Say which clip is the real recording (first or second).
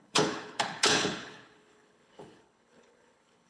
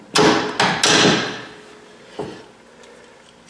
second